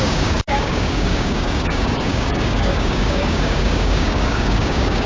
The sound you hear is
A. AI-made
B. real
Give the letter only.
A